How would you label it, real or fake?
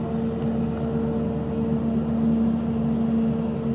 real